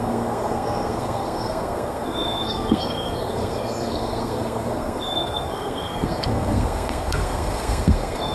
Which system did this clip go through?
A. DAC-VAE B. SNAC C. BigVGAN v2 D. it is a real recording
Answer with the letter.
B